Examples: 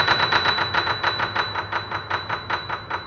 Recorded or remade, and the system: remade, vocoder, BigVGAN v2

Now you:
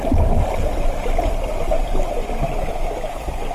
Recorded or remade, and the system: remade, vocoder, BigVGAN v2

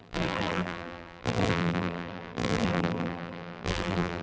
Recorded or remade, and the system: remade, vocoder, BigVGAN v2